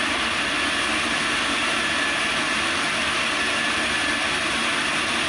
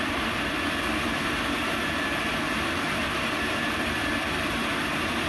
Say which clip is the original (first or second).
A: first